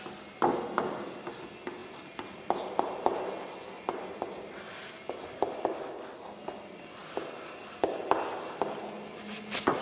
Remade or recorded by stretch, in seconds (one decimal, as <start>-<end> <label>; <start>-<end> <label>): 0.0-9.8 recorded